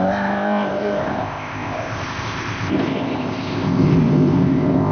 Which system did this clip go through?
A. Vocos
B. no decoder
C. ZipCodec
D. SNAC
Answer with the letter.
C